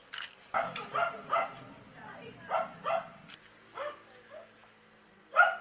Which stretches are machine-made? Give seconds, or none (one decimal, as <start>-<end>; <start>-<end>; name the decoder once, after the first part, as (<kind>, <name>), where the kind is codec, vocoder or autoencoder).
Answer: none